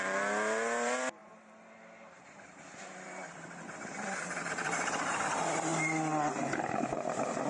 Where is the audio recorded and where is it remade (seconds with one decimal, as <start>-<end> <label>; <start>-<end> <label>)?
0.0-5.7 remade; 5.7-7.5 recorded